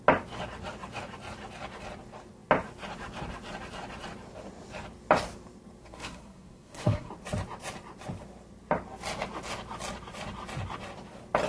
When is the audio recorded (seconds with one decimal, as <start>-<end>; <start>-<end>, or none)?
0.0-5.8; 7.1-11.5